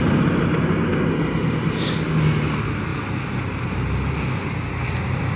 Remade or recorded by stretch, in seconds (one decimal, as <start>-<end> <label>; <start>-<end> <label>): 0.0-5.4 recorded